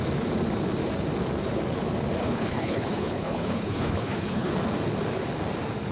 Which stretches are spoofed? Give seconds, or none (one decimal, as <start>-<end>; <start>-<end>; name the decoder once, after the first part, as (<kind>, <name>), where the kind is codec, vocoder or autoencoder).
2.2-4.5 (codec, HILCodec)